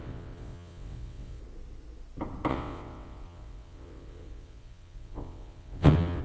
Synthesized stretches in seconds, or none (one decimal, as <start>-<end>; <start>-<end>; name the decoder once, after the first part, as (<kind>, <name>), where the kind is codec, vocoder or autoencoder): 0.0-1.4 (vocoder, WaveNeXt); 2.5-6.2